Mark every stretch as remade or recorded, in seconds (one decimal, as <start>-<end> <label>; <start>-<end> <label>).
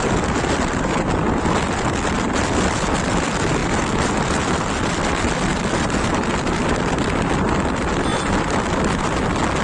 0.0-8.1 recorded; 8.1-9.0 remade; 9.0-9.6 recorded